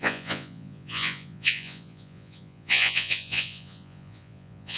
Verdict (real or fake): fake